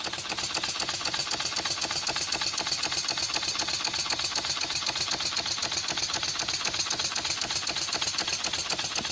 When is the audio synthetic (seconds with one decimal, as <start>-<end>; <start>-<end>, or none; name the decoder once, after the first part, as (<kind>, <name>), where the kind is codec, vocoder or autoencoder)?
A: none